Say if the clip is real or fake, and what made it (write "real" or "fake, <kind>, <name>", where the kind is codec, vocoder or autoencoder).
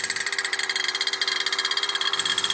real